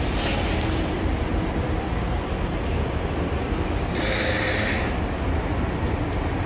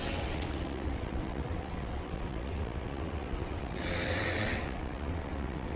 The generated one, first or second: second